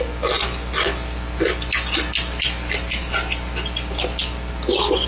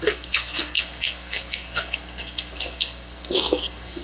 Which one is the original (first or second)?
first